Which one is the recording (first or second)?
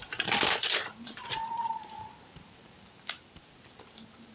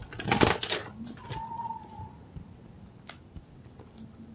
second